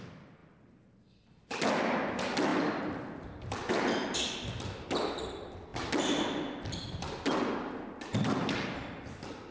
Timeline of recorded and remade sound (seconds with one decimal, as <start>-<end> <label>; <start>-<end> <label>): 0.0-9.5 recorded